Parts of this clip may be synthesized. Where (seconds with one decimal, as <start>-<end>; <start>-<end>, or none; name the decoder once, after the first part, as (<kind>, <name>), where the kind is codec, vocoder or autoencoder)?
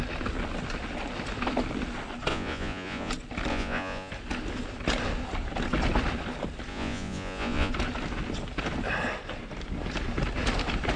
2.3-3.1 (vocoder, Vocos); 3.5-4.1; 6.7-7.7